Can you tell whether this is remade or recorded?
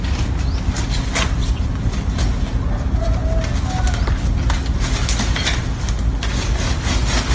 recorded